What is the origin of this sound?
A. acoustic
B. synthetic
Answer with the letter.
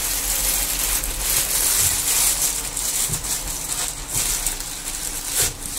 A